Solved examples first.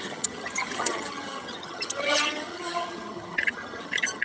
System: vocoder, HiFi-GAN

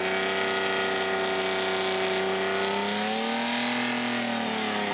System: none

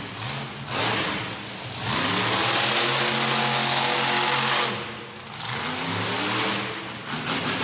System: none